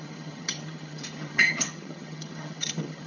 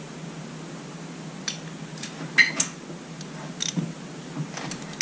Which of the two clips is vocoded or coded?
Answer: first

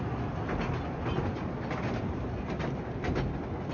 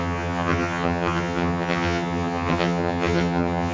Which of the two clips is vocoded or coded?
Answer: second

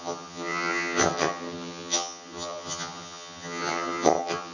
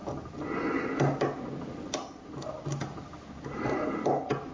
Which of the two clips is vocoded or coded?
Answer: first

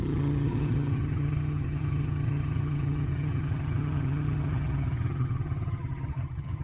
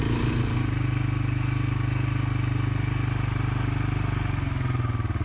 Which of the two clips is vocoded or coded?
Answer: first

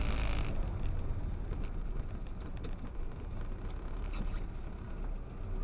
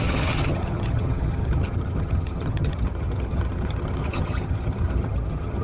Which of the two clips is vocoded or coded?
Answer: second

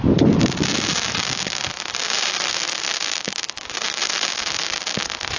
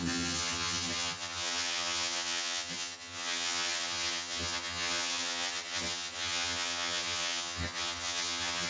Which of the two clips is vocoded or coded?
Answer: second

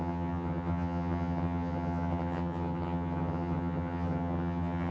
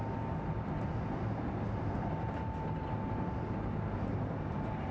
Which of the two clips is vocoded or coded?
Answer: first